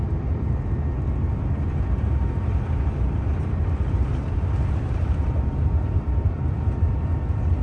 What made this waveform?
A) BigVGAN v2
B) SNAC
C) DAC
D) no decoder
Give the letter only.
A